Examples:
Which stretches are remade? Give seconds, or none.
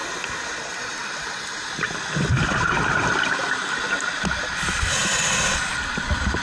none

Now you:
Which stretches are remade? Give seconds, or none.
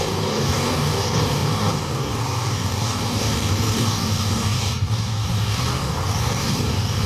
0.0-7.1 (codec, DAC)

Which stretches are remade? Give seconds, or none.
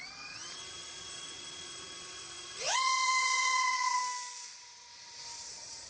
0.0-4.0 (vocoder, Vocos); 5.5-5.9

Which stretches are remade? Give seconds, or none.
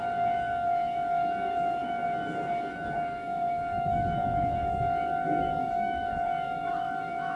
0.0-7.4 (autoencoder, DAC-VAE)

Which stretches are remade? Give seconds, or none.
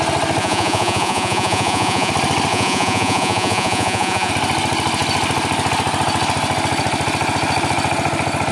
0.4-2.1 (vocoder, Vocos); 2.5-4.3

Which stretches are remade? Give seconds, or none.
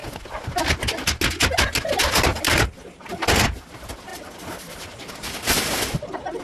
none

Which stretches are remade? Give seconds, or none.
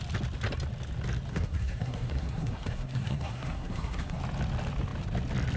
1.3-4.2 (codec, SNAC)